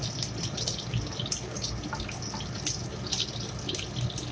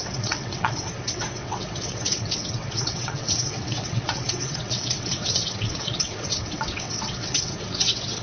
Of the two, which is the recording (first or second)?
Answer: first